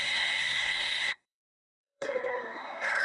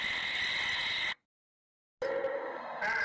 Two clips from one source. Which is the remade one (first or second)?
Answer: first